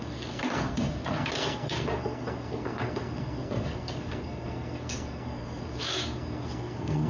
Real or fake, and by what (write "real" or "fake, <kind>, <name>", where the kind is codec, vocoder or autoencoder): fake, codec, SNAC